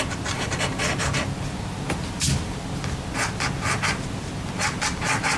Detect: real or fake real